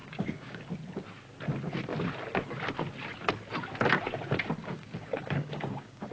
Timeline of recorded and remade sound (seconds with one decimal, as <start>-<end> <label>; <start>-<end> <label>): 0.0-0.6 remade; 0.6-4.6 recorded; 4.6-6.1 remade